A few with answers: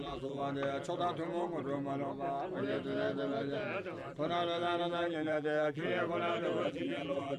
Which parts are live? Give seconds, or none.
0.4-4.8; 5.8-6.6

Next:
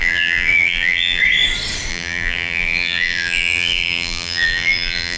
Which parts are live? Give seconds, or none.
1.2-1.9